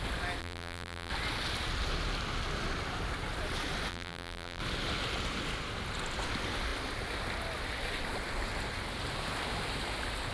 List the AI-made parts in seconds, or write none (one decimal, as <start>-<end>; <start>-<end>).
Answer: 0.4-1.1; 3.9-4.6